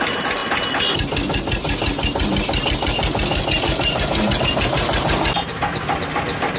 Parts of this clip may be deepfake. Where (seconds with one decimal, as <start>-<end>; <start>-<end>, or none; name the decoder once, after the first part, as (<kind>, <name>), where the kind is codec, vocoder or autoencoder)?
none